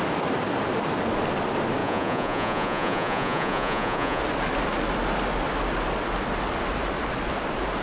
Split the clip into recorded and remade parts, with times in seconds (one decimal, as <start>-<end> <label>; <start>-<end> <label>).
0.0-1.8 recorded; 1.8-4.2 remade; 4.2-7.8 recorded